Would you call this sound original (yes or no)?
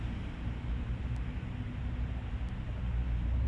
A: yes